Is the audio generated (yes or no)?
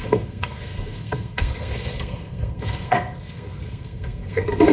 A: yes